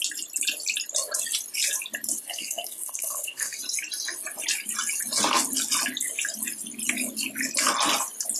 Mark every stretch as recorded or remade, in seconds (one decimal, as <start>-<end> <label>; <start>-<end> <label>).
0.0-2.2 recorded; 2.2-3.6 remade; 3.6-8.4 recorded